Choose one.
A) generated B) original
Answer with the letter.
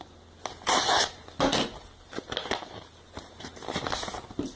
B